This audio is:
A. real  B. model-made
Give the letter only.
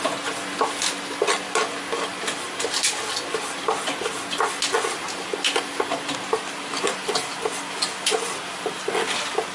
A